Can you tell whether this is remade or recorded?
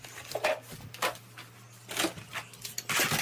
recorded